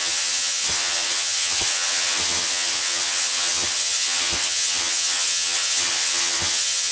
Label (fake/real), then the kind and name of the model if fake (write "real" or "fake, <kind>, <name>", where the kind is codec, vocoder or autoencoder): fake, vocoder, HiFi-GAN